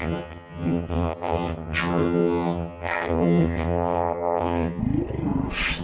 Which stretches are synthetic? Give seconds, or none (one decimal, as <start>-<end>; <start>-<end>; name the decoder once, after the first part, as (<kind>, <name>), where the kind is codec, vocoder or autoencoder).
0.0-4.8 (vocoder, HiFi-GAN)